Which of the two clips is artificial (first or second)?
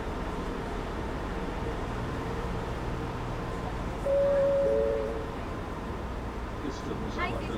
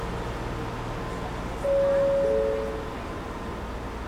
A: first